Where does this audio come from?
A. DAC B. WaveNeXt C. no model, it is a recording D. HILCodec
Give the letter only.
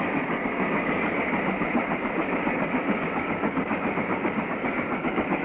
A